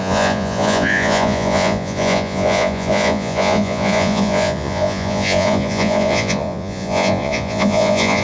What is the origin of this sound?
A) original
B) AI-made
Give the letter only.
B